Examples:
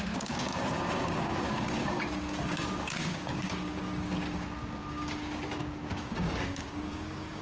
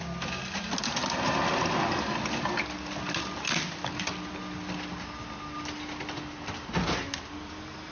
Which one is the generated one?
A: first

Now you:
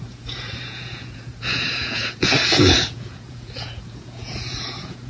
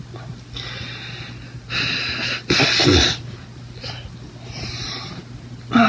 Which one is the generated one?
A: first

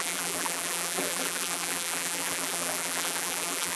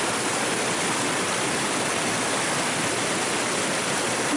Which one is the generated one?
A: first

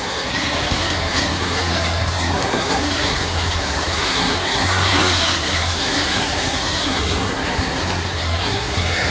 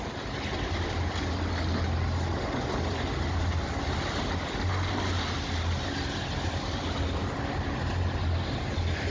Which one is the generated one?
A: first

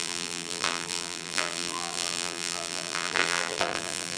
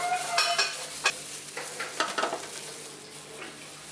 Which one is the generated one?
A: first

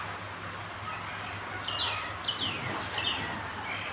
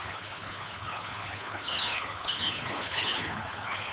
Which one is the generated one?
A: second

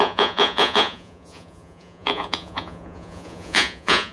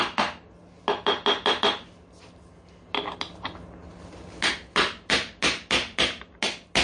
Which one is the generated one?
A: first